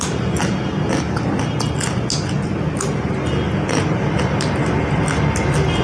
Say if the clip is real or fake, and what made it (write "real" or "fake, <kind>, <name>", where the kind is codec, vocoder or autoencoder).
real